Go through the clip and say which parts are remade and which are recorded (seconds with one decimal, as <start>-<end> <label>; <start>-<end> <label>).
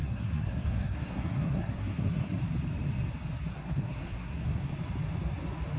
0.0-2.4 remade; 2.4-3.5 recorded; 3.5-4.7 remade; 4.7-5.8 recorded